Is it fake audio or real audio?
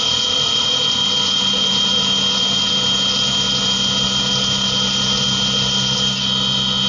real